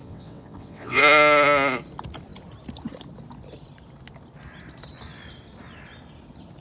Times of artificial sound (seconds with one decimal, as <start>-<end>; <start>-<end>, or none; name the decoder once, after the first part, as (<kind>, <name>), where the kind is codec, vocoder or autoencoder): 0.0-1.0 (vocoder, WaveNeXt)